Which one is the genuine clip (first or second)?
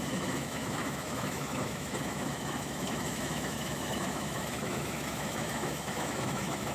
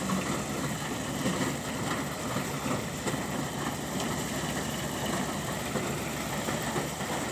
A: second